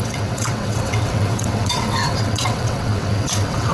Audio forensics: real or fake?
fake